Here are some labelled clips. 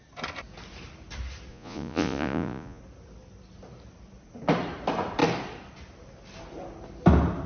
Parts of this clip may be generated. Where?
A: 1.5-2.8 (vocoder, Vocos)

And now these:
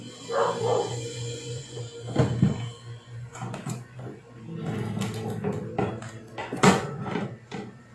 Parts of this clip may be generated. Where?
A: 0.9-1.8 (vocoder, Vocos); 3.0-4.2; 6.4-7.0